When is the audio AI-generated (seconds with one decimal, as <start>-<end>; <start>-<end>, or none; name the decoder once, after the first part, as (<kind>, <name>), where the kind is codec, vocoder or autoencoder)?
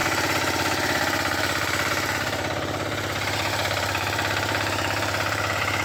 0.0-5.8 (vocoder, BigVGAN v2)